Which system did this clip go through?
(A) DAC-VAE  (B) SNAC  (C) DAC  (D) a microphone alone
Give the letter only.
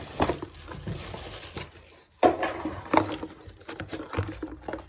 D